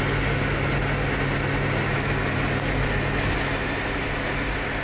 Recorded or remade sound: recorded